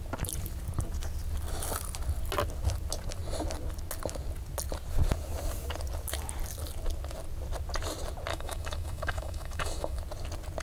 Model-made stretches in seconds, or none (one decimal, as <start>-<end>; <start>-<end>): 8.3-10.0